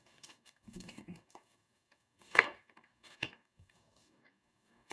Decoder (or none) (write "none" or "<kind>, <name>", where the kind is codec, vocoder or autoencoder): codec, DAC